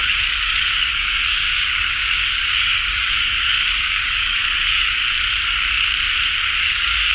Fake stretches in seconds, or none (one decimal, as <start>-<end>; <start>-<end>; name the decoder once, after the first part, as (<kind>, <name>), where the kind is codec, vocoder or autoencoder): 0.0-5.0 (codec, DAC); 6.6-7.1